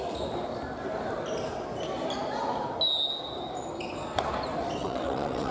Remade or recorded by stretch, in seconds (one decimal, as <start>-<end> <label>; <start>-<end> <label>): 0.0-4.8 recorded; 4.8-5.5 remade